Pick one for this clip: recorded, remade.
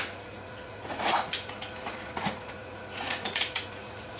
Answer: remade